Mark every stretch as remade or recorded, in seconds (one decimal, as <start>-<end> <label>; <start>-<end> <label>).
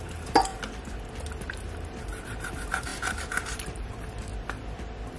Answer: 0.0-0.5 remade; 0.5-1.4 recorded; 1.4-4.3 remade; 4.3-5.2 recorded